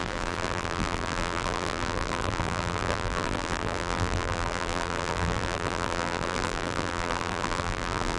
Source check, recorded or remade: remade